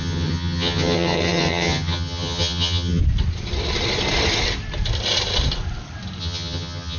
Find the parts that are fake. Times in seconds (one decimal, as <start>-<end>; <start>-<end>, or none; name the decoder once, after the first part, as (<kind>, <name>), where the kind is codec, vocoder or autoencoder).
0.0-3.0 (vocoder, HiFi-GAN); 6.2-7.0